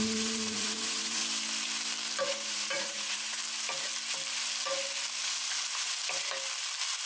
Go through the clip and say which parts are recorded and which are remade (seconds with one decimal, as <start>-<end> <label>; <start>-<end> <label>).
0.0-1.2 remade; 1.2-2.2 recorded; 2.2-3.4 remade; 3.4-7.1 recorded